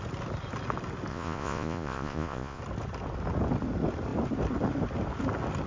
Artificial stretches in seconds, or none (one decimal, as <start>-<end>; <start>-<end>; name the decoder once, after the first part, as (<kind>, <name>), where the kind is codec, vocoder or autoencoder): 1.1-2.6 (vocoder, Vocos)